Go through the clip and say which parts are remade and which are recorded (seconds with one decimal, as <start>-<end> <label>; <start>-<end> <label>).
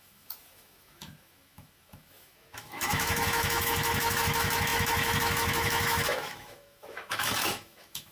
0.0-8.1 remade